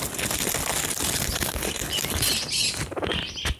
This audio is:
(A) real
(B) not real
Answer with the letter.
A